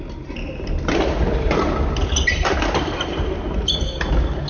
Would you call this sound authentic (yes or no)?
yes